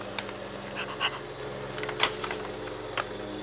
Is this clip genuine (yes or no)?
yes